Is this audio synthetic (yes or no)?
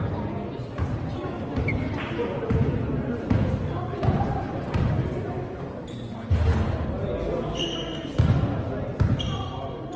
no